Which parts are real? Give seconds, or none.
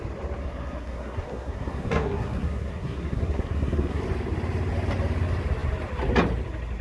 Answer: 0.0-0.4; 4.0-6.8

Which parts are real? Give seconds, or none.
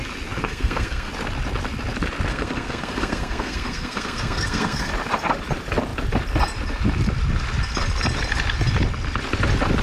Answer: 0.0-0.4; 1.1-2.3; 4.9-9.8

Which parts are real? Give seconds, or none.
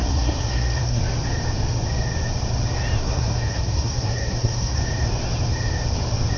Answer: 1.0-3.0; 4.8-6.4